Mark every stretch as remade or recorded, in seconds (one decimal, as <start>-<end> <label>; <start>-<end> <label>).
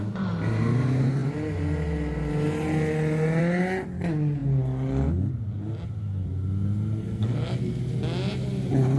0.0-7.0 recorded; 7.0-7.8 remade; 7.8-9.0 recorded